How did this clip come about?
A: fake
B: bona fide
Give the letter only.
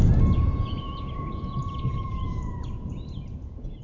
A